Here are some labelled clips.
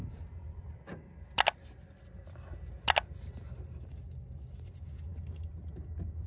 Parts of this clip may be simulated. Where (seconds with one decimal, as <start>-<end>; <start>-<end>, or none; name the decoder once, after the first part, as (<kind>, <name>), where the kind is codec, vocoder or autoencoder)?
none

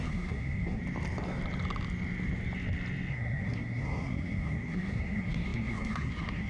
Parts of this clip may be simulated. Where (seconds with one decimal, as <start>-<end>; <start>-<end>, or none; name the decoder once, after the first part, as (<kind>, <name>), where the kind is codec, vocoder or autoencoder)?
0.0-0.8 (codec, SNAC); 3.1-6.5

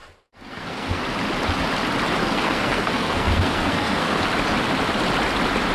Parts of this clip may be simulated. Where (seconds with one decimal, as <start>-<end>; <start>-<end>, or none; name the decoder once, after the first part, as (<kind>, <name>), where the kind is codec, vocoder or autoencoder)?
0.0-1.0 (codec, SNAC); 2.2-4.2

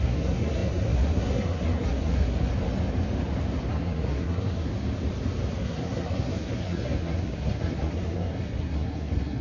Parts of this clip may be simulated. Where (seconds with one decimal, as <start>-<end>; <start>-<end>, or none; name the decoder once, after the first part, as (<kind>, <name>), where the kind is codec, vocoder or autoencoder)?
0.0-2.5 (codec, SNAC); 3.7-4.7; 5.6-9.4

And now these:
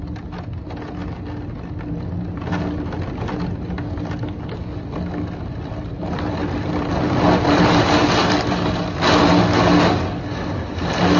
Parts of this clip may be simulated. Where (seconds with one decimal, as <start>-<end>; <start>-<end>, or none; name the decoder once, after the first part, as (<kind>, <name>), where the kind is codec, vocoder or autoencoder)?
none

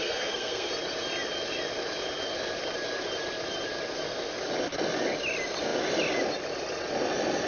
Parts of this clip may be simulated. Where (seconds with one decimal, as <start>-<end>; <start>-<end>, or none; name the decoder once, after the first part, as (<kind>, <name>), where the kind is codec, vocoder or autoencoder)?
0.0-0.7 (codec, SNAC)